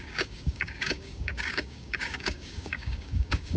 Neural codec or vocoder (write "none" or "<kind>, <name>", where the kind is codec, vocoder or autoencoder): codec, DAC